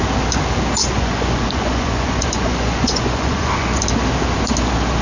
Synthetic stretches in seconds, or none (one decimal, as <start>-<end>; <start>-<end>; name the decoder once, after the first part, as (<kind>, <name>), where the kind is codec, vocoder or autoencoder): 0.8-3.8 (vocoder, Vocos)